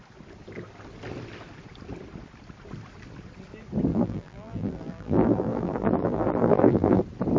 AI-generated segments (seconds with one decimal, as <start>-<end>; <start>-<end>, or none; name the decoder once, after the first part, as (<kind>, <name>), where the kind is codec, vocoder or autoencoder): 3.9-7.0 (vocoder, BigVGAN v2)